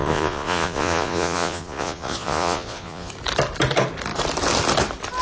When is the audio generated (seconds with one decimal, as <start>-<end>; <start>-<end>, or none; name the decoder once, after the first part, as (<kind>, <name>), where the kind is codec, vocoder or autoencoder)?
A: 0.0-3.1 (vocoder, Vocos)